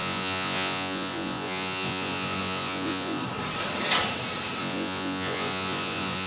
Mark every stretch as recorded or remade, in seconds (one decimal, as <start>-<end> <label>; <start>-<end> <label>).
0.0-3.2 remade; 3.2-4.6 recorded; 4.6-6.3 remade